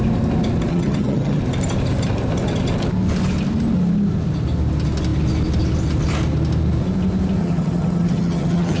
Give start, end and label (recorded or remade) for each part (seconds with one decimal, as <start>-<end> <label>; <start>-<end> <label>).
0.0-0.7 recorded; 0.7-1.4 remade; 1.4-7.4 recorded; 7.4-8.8 remade